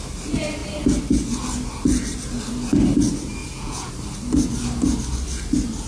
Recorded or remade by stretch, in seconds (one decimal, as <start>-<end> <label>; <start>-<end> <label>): 0.0-3.4 recorded; 3.4-3.9 remade; 3.9-5.9 recorded